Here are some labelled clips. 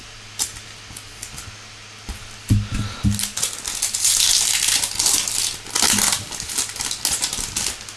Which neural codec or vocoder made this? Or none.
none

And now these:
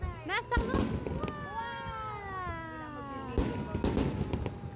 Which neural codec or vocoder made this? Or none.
none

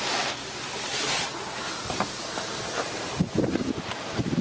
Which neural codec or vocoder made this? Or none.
none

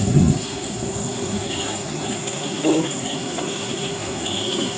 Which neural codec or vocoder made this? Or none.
codec, SNAC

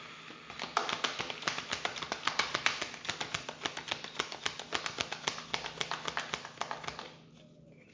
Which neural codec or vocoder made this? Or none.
none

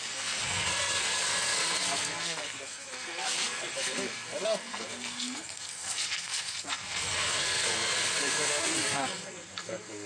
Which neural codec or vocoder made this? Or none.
codec, SNAC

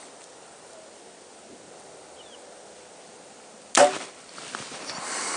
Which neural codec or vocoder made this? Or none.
none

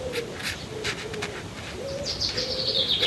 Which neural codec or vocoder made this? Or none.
none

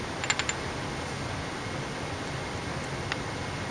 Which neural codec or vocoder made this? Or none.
none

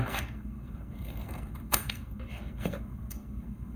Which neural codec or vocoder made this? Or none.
codec, SNAC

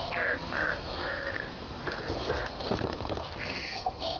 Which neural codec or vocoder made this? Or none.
codec, SNAC